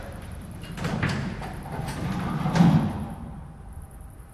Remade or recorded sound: remade